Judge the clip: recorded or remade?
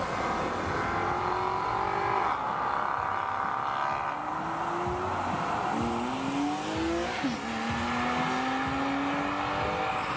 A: recorded